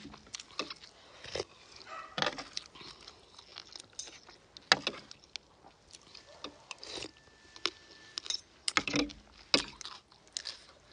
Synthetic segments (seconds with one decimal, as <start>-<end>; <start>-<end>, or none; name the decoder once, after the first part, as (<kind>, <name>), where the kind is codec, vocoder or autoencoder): none